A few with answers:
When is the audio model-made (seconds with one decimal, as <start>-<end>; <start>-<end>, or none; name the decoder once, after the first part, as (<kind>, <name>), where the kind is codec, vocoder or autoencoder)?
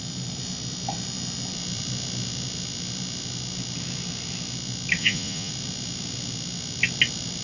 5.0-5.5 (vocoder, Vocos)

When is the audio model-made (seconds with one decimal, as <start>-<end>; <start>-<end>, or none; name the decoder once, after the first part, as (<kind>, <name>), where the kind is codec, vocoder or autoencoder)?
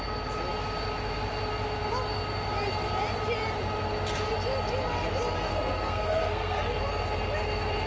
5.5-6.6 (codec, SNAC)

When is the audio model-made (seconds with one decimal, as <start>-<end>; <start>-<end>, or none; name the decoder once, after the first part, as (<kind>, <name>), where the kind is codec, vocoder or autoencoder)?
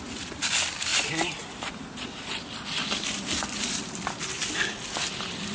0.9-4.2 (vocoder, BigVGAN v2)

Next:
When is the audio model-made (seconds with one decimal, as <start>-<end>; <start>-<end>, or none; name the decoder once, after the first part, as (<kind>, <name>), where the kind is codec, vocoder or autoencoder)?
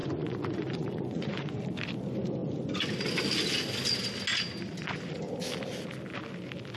0.0-1.6 (vocoder, Vocos)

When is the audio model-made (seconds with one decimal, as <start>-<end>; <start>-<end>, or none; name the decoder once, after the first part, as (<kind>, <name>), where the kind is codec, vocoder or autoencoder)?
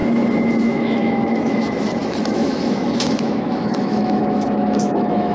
0.6-5.3 (autoencoder, DAC-VAE)